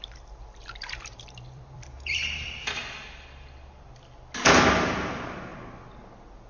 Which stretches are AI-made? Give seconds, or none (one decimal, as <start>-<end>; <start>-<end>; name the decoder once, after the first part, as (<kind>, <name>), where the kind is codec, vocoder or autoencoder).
0.0-2.8 (vocoder, BigVGAN v2); 5.1-5.5